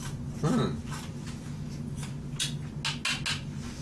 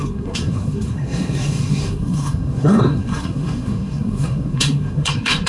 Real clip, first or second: first